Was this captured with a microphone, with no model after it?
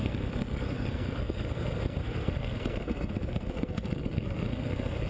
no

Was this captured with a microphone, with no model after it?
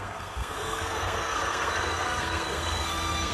no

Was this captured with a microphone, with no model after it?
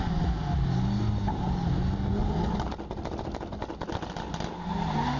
yes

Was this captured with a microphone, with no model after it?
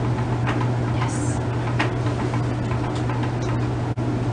yes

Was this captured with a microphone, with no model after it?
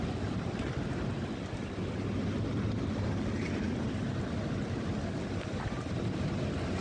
yes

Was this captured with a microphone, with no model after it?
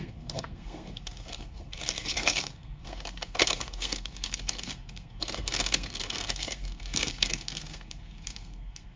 no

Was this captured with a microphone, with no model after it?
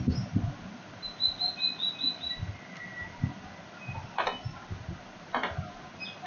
yes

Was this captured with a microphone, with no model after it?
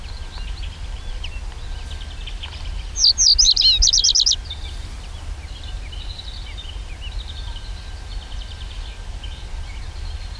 yes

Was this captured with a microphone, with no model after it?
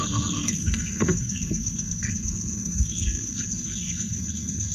no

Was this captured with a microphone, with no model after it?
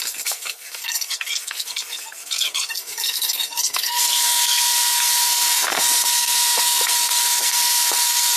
no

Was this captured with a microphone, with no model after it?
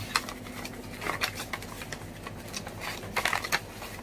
yes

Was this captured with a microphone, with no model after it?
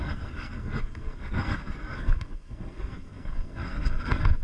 no